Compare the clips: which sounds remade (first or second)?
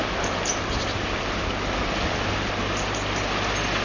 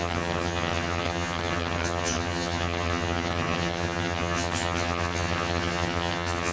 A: second